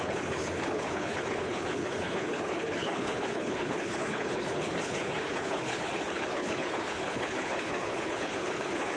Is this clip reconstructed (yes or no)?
yes